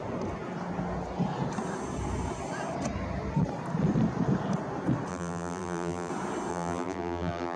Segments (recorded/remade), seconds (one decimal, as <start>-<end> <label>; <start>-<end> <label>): 0.0-5.1 recorded; 5.1-6.1 remade; 6.1-6.5 recorded; 6.5-7.6 remade